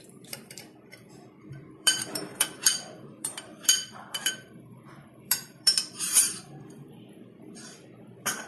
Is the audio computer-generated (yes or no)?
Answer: yes